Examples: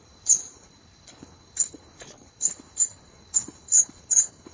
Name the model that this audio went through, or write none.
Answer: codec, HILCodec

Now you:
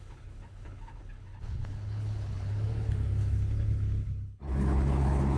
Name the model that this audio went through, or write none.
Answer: codec, HILCodec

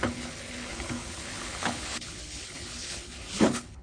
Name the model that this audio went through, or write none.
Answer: codec, HILCodec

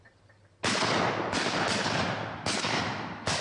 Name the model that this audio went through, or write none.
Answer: none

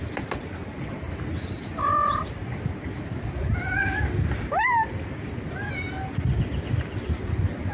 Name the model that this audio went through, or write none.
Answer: none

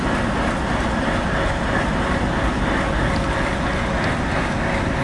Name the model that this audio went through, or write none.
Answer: none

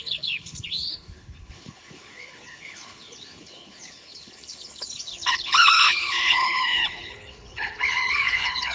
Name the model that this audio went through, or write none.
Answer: codec, HILCodec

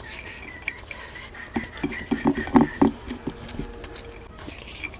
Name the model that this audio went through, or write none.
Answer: none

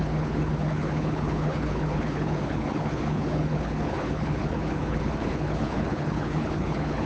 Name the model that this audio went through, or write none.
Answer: codec, HILCodec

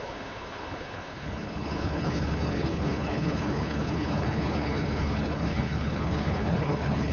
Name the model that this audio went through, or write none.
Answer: codec, HILCodec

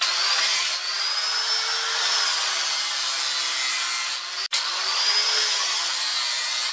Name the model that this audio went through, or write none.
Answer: none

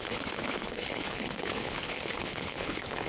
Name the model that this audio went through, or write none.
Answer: codec, HILCodec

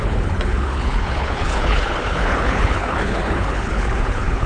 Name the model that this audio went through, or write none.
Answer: codec, HILCodec